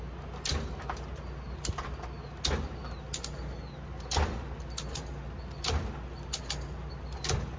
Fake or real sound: real